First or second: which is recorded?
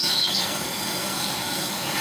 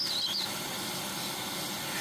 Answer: second